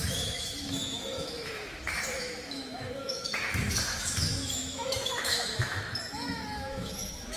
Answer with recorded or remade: remade